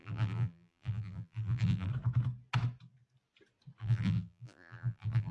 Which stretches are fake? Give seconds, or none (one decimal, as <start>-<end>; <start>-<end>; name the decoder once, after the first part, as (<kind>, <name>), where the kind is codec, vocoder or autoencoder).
0.0-1.9 (vocoder, BigVGAN v2); 3.8-5.3